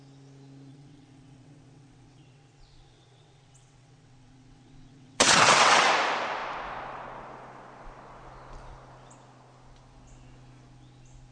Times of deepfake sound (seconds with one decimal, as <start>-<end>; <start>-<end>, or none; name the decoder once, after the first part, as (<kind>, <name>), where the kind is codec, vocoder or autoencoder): 0.7-5.9 (vocoder, WaveNeXt)

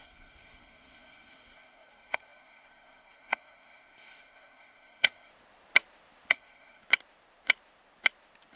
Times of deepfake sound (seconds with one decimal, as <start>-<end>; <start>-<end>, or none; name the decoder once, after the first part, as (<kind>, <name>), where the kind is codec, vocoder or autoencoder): 0.0-5.3 (codec, SNAC); 6.3-6.8

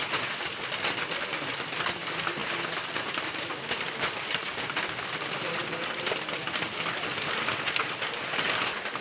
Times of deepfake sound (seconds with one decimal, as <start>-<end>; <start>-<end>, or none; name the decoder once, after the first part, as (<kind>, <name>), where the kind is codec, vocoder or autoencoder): none

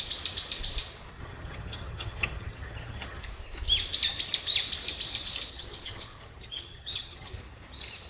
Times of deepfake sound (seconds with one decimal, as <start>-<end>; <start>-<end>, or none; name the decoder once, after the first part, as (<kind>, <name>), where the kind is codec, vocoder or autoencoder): 1.2-3.2 (vocoder, HiFi-GAN); 5.5-7.3

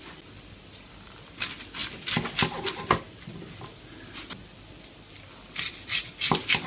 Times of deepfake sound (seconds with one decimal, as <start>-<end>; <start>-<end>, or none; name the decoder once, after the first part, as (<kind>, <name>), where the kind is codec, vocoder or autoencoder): none

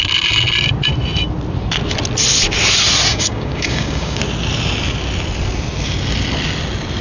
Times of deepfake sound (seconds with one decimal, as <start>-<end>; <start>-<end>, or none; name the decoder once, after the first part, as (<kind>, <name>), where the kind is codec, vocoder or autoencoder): 3.1-4.2 (codec, DAC)

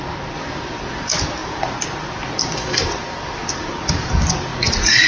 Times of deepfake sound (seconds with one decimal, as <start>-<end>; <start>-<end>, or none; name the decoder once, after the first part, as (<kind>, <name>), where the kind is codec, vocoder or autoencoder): 4.5-5.1 (vocoder, Vocos)

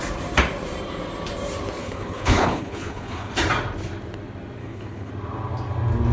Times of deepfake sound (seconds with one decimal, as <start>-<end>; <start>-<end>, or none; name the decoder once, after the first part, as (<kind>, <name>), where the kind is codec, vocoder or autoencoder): 1.8-3.3 (codec, HILCodec); 4.6-5.1